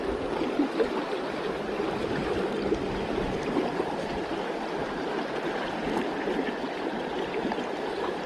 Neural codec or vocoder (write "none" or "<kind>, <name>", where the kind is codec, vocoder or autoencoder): none